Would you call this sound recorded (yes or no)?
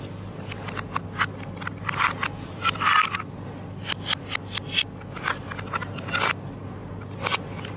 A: yes